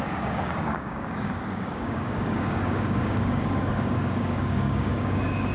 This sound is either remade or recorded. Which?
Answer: remade